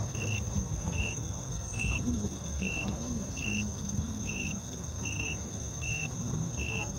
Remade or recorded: remade